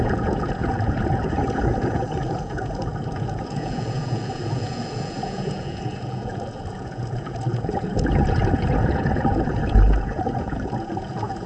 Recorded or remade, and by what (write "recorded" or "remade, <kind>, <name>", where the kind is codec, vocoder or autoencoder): remade, vocoder, Vocos